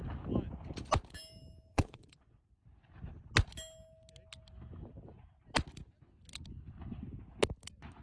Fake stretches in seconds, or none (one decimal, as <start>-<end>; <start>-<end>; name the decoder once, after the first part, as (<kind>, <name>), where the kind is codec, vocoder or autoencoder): 1.7-2.4 (vocoder, Vocos)